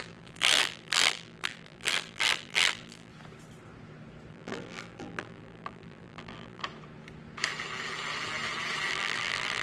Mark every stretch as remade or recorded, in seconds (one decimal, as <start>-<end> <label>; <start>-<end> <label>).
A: 0.0-3.1 remade; 3.1-4.3 recorded; 4.3-6.6 remade; 6.6-8.9 recorded; 8.9-9.6 remade